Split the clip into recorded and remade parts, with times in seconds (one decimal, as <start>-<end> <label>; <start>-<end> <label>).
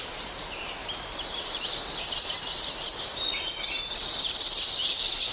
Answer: 0.0-0.8 recorded; 0.8-1.4 remade; 1.4-5.3 recorded